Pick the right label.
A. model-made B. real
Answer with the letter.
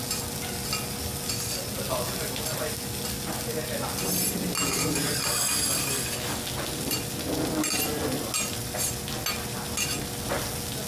B